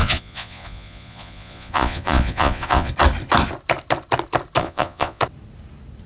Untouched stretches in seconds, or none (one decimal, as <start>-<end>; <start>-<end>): 2.9-4.6; 5.2-6.1

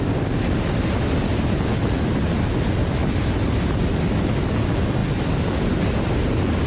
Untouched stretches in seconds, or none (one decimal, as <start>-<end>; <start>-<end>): 0.0-6.7

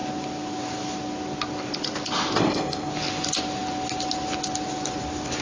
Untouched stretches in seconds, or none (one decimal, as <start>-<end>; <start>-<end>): 0.0-2.4; 2.9-5.4

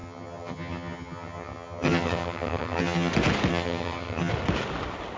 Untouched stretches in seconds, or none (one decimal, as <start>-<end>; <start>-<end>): 3.1-3.5; 4.3-5.2

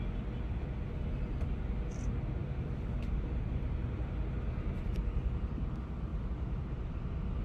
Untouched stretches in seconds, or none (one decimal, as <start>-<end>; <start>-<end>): 0.0-2.4; 4.1-6.1; 6.9-7.4

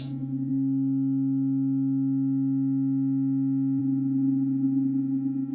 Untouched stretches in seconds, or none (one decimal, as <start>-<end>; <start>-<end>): 0.5-3.8

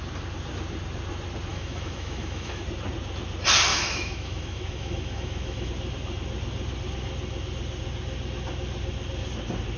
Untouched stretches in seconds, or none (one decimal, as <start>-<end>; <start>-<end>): 0.0-1.5; 2.6-3.7; 5.7-9.8

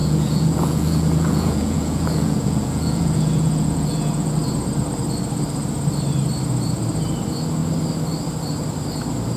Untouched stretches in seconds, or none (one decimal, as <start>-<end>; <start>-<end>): 4.3-9.4